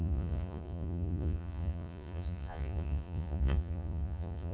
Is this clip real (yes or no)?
no